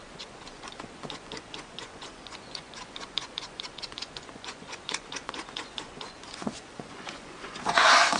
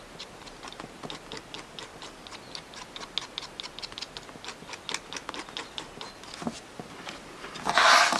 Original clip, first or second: second